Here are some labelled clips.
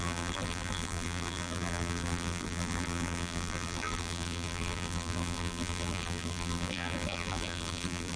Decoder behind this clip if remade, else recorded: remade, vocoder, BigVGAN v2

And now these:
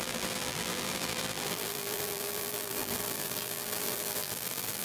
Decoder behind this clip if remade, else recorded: remade, vocoder, BigVGAN v2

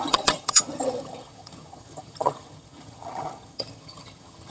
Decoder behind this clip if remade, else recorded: remade, vocoder, HiFi-GAN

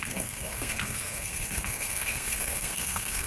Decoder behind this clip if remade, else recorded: remade, codec, SNAC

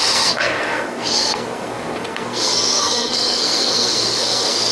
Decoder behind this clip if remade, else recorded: remade, codec, SNAC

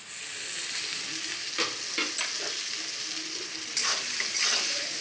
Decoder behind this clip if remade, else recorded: recorded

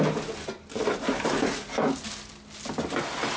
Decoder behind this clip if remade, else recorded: recorded